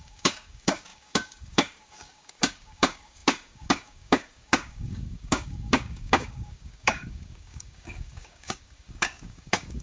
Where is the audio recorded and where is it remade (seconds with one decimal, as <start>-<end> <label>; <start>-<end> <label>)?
0.0-9.8 remade